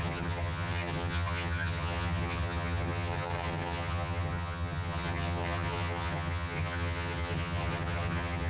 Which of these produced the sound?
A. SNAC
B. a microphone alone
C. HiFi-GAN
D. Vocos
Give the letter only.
C